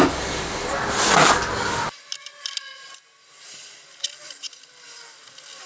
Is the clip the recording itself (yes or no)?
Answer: yes